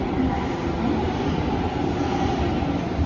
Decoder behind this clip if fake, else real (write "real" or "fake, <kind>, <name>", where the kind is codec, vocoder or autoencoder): real